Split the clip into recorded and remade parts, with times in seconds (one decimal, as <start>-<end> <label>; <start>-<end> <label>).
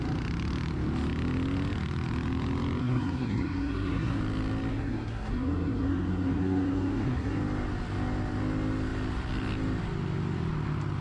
0.0-2.8 recorded; 2.8-4.2 remade; 4.2-4.7 recorded; 4.7-7.4 remade; 7.4-11.0 recorded